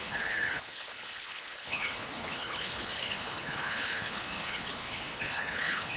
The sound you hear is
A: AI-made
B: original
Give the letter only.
A